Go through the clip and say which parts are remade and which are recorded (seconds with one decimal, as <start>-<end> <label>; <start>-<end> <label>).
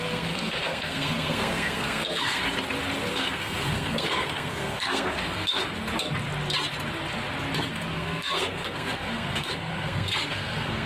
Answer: 0.0-2.4 remade; 2.4-3.1 recorded; 3.1-5.6 remade; 5.6-7.7 recorded; 7.7-10.9 remade